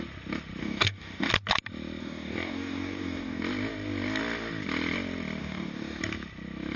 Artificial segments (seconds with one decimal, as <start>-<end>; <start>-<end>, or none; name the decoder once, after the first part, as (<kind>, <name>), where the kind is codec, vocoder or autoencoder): 0.6-1.3 (codec, DAC); 2.0-3.4; 5.4-6.0